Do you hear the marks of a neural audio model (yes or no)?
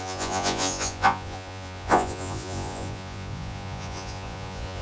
yes